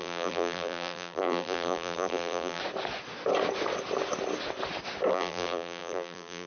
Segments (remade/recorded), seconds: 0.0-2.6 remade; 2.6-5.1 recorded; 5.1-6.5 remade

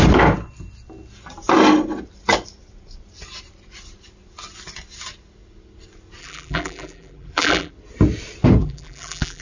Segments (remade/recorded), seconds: 0.0-6.2 recorded; 6.2-7.7 remade; 7.7-8.6 recorded; 8.6-9.4 remade